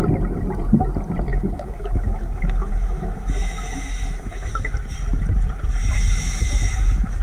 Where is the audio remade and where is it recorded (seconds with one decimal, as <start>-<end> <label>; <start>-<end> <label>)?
0.0-1.3 recorded; 1.3-4.5 remade; 4.5-5.8 recorded; 5.8-7.2 remade